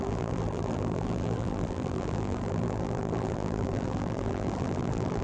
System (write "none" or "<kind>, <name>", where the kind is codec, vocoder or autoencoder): vocoder, BigVGAN v2